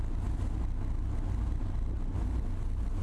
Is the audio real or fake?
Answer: real